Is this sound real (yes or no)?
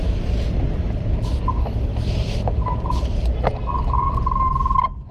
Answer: yes